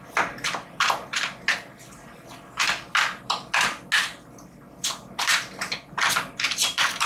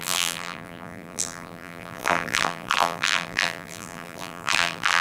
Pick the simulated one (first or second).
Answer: second